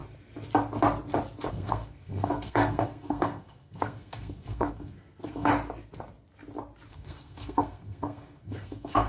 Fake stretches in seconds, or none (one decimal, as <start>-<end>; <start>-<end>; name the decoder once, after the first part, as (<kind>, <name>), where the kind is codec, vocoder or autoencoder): 1.5-5.5 (codec, SNAC); 6.9-9.1